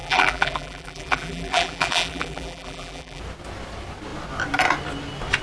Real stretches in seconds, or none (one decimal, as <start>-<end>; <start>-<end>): 3.2-5.4